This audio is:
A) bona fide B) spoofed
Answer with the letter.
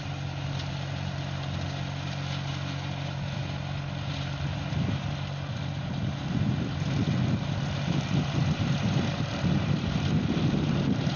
A